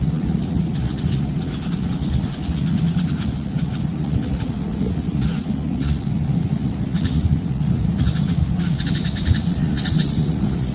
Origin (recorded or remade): remade